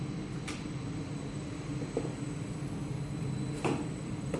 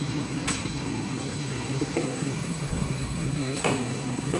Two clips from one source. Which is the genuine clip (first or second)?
first